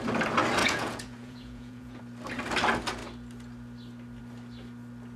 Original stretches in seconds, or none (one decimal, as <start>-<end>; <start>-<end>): 0.0-0.6; 2.0-5.2